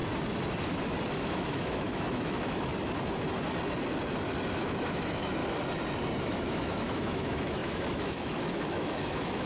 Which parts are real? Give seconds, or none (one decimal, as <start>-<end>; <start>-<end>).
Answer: 0.0-1.1; 2.7-4.6; 5.4-6.2